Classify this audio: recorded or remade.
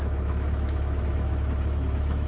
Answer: remade